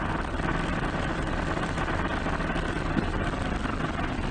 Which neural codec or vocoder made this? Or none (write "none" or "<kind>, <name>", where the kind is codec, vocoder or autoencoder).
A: none